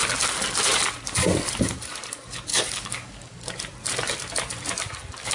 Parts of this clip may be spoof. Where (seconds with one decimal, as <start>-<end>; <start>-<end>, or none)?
2.5-3.6